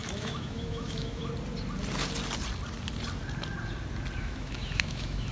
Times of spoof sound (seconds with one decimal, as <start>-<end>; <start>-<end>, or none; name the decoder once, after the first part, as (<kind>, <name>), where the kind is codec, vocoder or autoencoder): 0.0-1.2 (autoencoder, DAC-VAE); 4.2-5.3